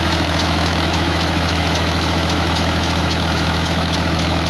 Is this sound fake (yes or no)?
yes